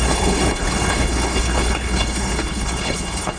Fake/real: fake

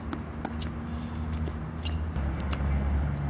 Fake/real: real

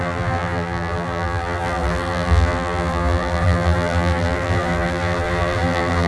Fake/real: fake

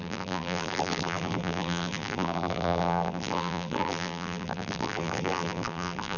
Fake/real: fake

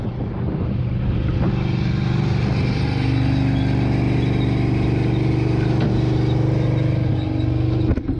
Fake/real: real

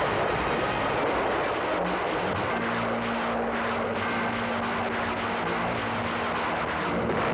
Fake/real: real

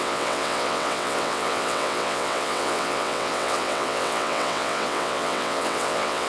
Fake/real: fake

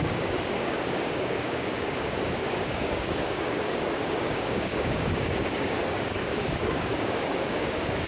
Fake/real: fake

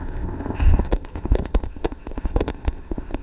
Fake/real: fake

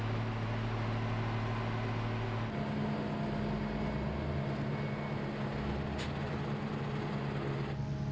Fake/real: real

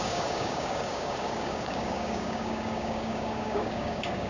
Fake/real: fake